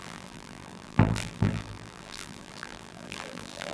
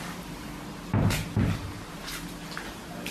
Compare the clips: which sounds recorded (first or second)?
second